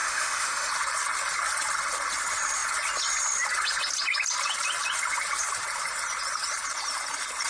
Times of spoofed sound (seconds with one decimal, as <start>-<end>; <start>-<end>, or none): 0.0-0.7